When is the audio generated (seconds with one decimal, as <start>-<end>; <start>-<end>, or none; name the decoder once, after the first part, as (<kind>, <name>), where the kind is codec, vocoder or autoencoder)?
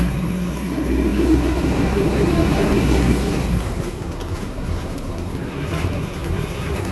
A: 0.0-6.9 (codec, SNAC)